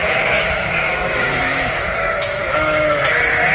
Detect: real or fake fake